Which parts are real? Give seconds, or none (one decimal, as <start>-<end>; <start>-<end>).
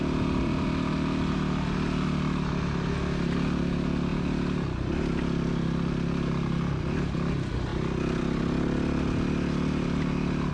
0.0-10.5